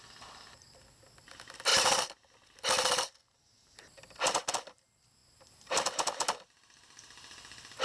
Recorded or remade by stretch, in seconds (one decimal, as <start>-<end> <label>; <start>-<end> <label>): 0.0-7.8 recorded